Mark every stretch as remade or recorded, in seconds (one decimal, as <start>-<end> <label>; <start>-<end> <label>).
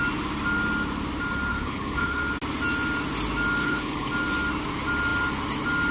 0.0-1.5 recorded; 1.5-2.2 remade; 2.2-3.6 recorded; 3.6-4.1 remade; 4.1-5.9 recorded